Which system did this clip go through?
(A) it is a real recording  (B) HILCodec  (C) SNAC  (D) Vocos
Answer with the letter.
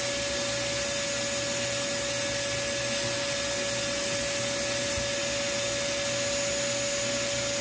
A